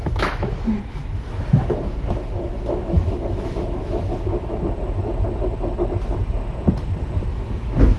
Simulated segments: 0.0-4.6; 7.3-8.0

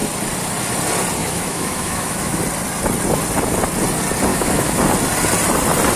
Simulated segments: 1.2-2.4; 4.3-4.8

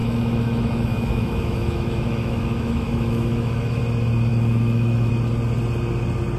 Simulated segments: 0.0-3.8; 4.3-5.1